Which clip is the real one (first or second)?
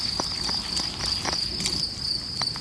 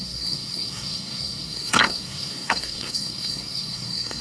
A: first